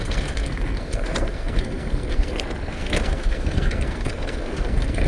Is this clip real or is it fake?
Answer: fake